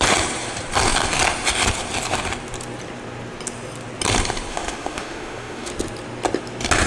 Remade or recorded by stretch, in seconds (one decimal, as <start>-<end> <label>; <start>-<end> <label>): 0.0-4.5 recorded; 4.5-5.7 remade; 5.7-6.9 recorded